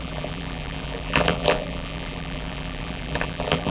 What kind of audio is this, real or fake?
fake